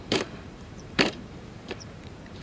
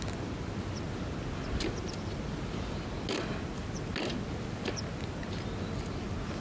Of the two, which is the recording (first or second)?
second